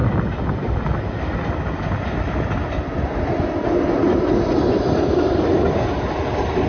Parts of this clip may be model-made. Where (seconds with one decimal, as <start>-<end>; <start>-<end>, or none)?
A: none